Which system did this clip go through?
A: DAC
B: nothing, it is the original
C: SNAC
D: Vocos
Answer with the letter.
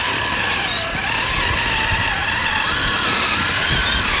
B